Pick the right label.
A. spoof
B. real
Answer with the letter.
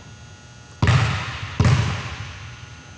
B